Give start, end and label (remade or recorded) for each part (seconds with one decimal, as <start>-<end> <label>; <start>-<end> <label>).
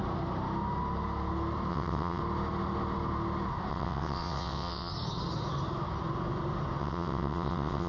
0.0-1.7 recorded; 1.7-2.2 remade; 2.2-3.7 recorded; 3.7-4.9 remade; 4.9-6.8 recorded; 6.8-7.9 remade